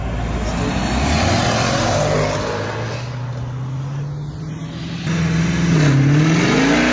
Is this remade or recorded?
recorded